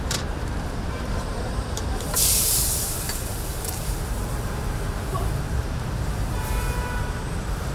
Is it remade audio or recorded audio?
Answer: remade